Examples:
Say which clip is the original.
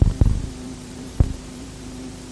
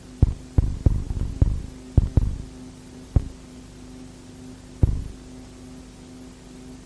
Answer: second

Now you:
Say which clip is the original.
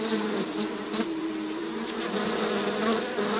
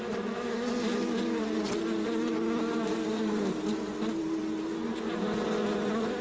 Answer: second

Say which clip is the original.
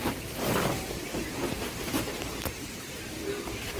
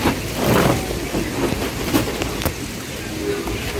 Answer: second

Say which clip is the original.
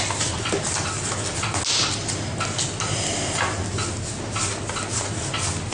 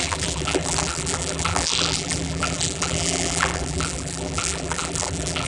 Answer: first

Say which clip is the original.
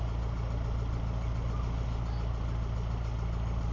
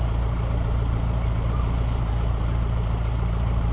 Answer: first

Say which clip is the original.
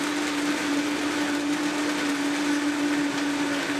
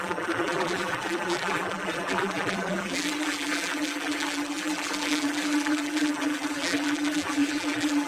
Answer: first